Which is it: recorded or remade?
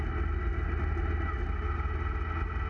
recorded